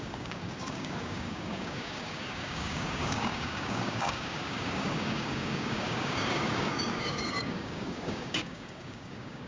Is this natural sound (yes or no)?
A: no